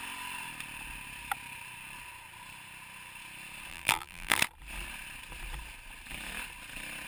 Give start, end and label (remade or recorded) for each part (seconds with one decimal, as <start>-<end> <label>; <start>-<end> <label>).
0.0-3.7 recorded; 3.7-4.4 remade; 4.4-7.1 recorded